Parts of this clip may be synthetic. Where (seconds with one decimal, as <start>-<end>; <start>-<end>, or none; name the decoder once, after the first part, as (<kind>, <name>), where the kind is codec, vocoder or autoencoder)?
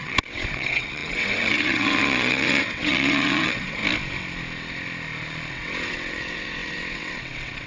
0.0-3.8 (vocoder, WaveNeXt); 5.5-7.7